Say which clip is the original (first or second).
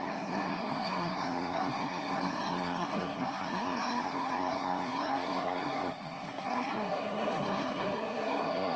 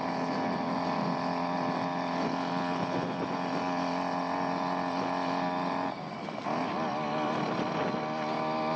second